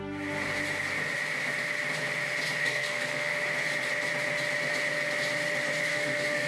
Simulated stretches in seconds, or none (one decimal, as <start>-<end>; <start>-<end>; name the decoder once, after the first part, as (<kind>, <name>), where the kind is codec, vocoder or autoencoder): 2.6-3.3 (codec, SNAC); 5.9-6.5